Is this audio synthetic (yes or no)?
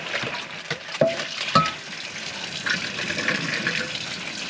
no